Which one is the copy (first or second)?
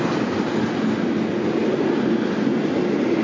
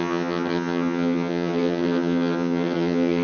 second